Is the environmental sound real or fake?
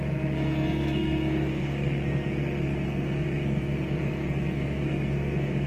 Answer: fake